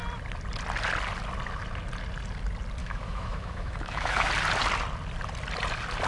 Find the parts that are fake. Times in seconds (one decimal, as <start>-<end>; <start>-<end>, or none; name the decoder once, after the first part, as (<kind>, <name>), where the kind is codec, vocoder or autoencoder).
2.8-4.3 (autoencoder, DAC-VAE)